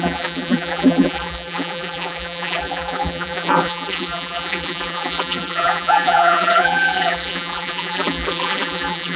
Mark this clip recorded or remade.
remade